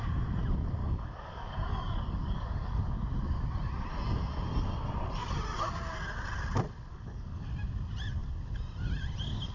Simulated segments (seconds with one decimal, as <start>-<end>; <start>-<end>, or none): 0.8-2.8; 6.9-7.5